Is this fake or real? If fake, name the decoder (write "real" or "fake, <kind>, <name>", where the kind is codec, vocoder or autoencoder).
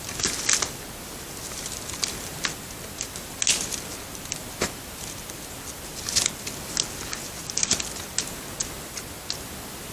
real